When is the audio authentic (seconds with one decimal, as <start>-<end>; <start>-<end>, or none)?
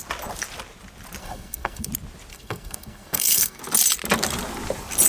0.0-1.2; 1.9-2.3; 3.6-5.1